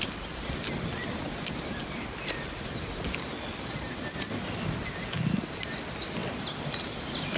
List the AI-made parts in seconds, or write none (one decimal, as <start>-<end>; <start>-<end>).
none